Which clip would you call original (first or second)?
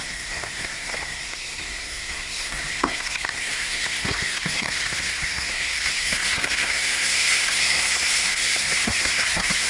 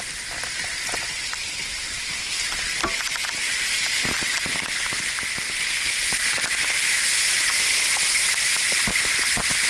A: second